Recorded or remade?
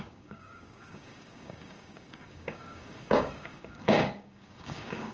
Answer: remade